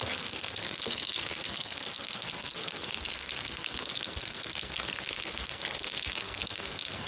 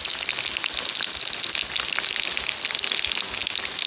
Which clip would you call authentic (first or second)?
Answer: second